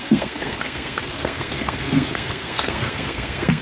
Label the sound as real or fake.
fake